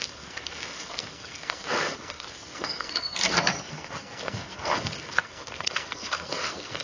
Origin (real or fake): fake